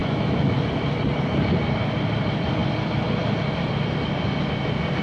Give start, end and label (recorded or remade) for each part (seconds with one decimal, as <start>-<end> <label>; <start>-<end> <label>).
0.0-0.6 remade; 0.6-5.0 recorded